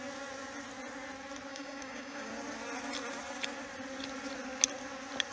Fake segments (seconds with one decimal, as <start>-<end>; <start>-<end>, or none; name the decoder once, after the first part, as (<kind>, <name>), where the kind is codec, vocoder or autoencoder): 1.5-2.3 (codec, DAC)